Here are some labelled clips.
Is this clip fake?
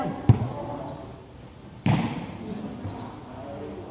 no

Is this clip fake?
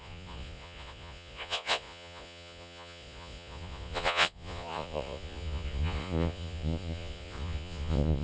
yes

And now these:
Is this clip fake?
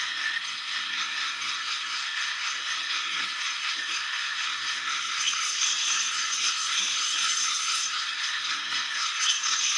yes